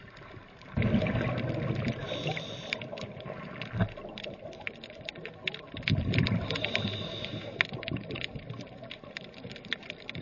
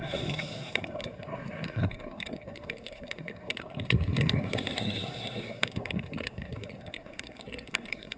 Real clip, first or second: first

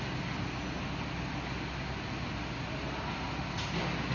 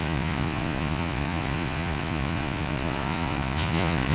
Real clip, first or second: first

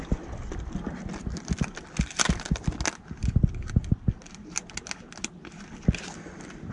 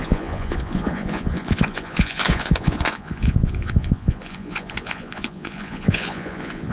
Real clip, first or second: first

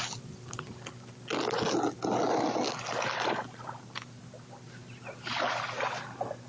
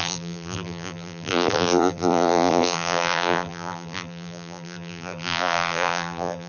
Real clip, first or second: first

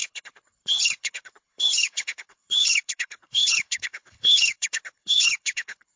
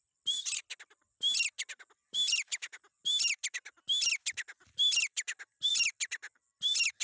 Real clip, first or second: second